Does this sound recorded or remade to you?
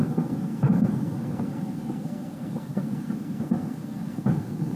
remade